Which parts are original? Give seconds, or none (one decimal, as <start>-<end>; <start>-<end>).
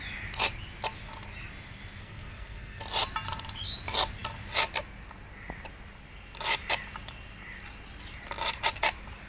0.0-2.0; 2.8-9.3